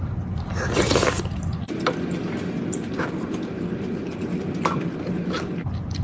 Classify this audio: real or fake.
real